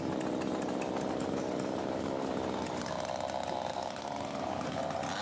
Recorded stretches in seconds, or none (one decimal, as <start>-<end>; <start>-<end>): 0.0-1.8; 2.3-3.7; 4.8-5.2